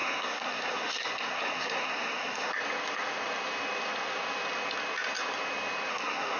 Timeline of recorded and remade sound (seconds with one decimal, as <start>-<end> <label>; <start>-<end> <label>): 0.0-2.5 remade; 2.5-5.9 recorded; 5.9-6.4 remade